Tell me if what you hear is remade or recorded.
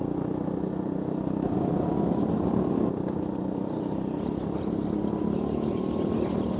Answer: recorded